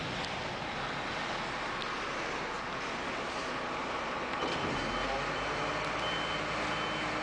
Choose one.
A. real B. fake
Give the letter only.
A